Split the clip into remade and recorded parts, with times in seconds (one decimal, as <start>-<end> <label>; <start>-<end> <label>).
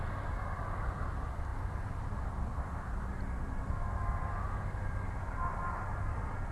0.0-6.5 recorded